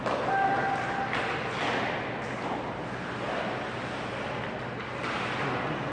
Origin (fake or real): real